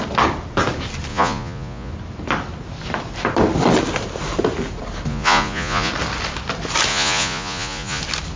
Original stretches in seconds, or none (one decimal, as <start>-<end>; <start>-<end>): 0.0-1.1; 1.9-5.1; 5.9-6.9; 8.0-8.4